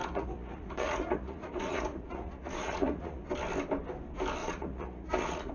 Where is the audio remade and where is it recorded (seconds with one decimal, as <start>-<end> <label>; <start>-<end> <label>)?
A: 0.0-3.3 remade; 3.3-4.4 recorded; 4.4-5.5 remade